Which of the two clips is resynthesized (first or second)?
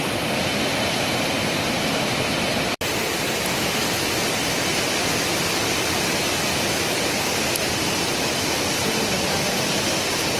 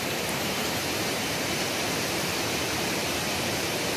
second